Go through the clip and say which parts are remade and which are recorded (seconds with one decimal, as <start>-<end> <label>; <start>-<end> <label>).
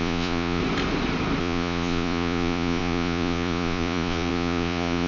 0.0-0.6 remade; 0.6-1.4 recorded; 1.4-5.1 remade